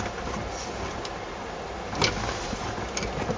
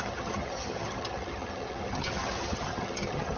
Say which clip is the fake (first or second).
second